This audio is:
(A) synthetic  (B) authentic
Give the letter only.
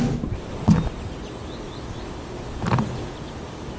B